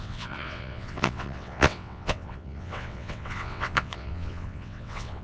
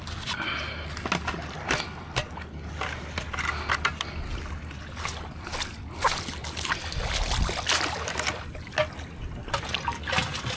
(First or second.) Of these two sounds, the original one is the second